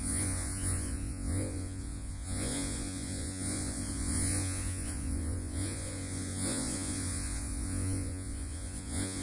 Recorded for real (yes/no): no